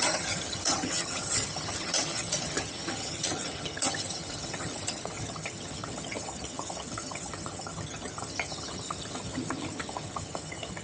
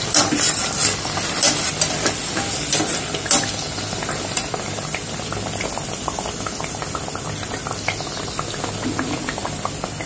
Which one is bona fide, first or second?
second